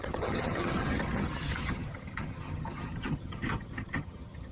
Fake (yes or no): yes